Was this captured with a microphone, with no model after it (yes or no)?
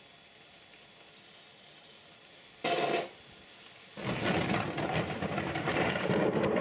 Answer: yes